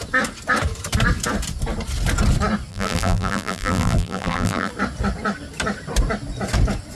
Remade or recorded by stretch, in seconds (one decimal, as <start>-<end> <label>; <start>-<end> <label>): 0.0-2.7 recorded; 2.7-4.7 remade; 4.7-6.9 recorded